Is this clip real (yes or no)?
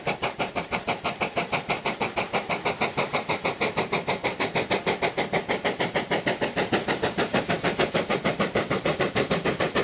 no